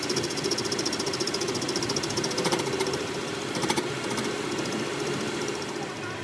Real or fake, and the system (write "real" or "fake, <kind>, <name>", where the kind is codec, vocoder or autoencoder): fake, vocoder, BigVGAN v2